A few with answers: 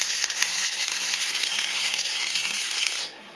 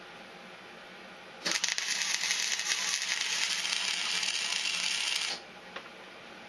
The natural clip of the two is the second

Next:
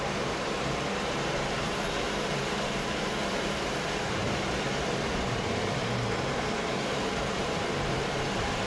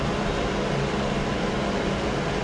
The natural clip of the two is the second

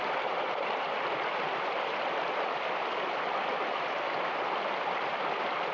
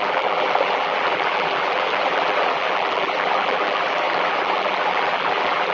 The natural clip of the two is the first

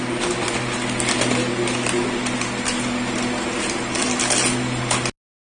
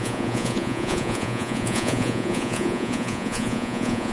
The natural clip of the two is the first